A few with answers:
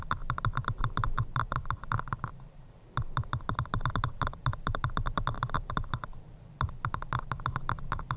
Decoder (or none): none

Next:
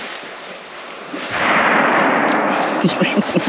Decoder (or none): none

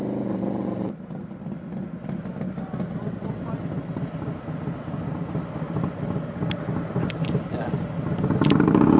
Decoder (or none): none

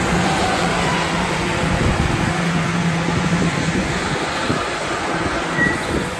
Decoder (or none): vocoder, Vocos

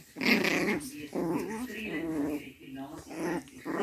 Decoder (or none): none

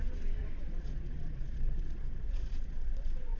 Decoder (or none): vocoder, Vocos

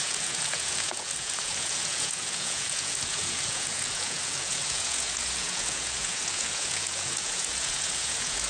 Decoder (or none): vocoder, Vocos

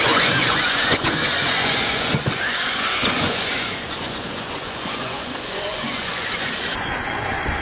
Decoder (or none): vocoder, Vocos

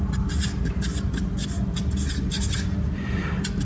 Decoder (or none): none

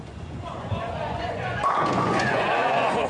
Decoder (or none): vocoder, Vocos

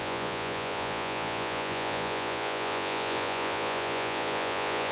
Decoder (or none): vocoder, Vocos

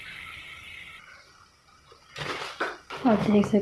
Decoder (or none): none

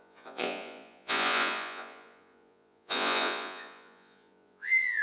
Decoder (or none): vocoder, Vocos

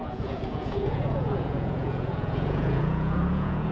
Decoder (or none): vocoder, Vocos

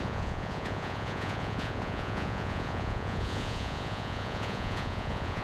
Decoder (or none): vocoder, Vocos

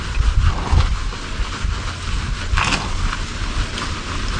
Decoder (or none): none